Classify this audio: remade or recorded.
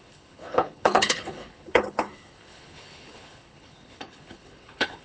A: remade